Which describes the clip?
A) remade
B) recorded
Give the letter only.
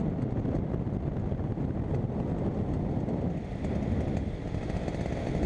B